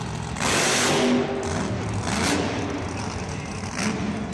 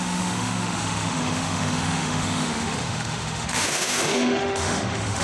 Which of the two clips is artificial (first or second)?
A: second